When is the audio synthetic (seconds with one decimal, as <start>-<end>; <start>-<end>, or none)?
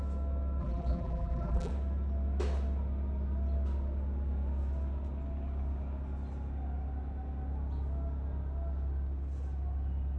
0.6-1.7